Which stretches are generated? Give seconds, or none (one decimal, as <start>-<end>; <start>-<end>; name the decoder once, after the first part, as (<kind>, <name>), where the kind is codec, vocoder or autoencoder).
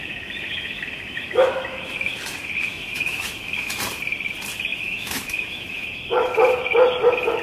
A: 0.0-2.1 (autoencoder, DAC-VAE); 2.7-3.8; 4.7-6.6